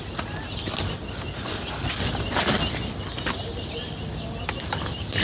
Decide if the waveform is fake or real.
real